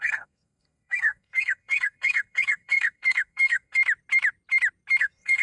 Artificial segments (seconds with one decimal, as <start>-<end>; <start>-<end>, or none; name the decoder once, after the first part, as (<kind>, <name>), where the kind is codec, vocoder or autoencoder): 0.0-3.8 (codec, SNAC); 5.0-5.4

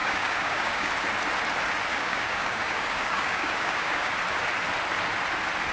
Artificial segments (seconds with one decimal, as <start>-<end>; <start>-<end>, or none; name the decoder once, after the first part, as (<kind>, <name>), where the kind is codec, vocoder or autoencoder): 0.0-0.9 (codec, DAC); 1.9-4.1

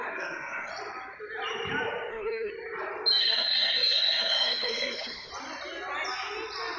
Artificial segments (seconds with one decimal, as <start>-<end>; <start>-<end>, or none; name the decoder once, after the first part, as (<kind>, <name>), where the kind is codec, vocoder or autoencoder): 0.0-0.7 (codec, SNAC); 2.1-2.5; 3.2-5.3

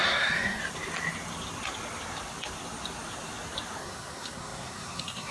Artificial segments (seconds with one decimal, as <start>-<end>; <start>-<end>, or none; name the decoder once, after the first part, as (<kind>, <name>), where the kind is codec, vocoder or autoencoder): 0.0-0.6 (codec, SNAC); 3.8-5.3

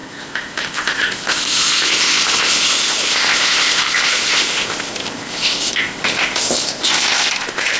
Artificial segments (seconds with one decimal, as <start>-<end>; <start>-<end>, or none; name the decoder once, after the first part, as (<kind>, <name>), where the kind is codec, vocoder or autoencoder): 0.0-7.8 (codec, ZipCodec)

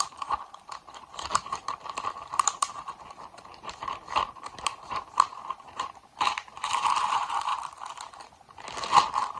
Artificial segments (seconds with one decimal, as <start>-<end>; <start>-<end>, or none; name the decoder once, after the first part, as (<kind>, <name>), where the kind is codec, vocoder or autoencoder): 0.0-7.5 (vocoder, BigVGAN v2)

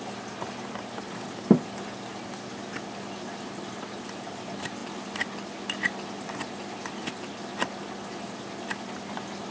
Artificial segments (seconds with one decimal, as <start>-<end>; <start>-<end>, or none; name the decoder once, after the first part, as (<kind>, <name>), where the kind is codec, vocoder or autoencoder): none

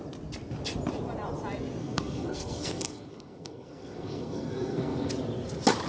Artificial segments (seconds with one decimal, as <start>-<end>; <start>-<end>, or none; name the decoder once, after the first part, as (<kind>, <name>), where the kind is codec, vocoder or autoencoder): 1.8-5.1 (codec, SNAC)